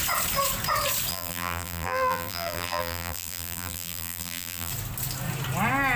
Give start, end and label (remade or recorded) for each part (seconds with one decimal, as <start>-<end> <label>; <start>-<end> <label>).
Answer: 0.0-1.1 recorded; 1.1-4.7 remade; 4.7-6.0 recorded